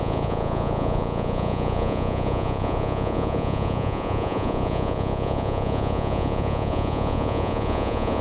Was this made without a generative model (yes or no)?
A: no